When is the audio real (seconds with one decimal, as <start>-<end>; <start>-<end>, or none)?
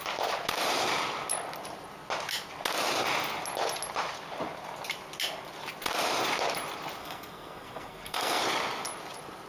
0.0-7.0; 8.4-9.5